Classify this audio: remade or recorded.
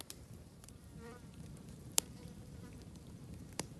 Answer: remade